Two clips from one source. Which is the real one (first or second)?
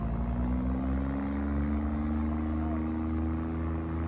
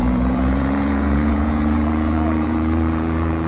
first